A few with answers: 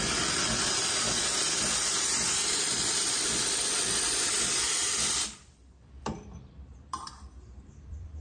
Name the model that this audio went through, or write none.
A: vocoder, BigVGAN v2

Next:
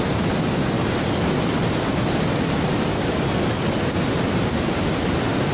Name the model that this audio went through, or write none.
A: none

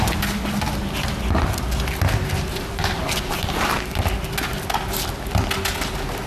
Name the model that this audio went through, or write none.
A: none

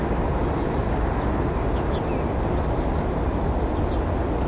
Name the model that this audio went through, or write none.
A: none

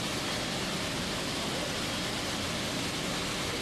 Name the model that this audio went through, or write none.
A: none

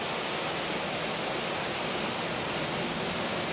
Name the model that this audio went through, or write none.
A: none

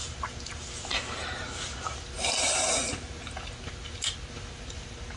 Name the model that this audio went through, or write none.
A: none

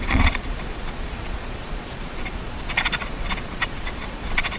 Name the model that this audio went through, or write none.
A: vocoder, Vocos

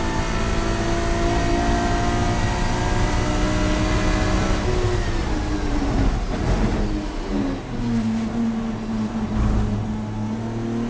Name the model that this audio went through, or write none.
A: none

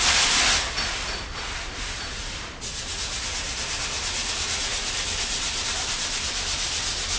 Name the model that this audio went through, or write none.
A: none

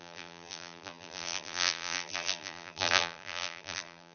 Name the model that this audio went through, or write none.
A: vocoder, BigVGAN v2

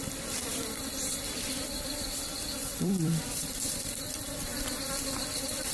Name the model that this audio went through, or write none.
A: vocoder, BigVGAN v2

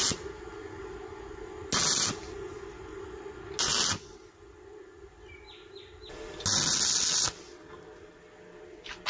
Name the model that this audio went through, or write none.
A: none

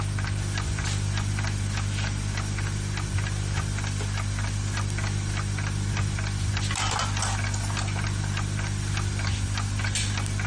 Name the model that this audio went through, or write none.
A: none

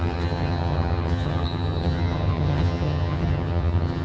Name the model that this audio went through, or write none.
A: vocoder, HiFi-GAN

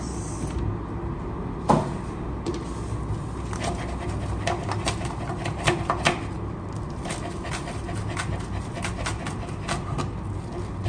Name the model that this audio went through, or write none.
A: none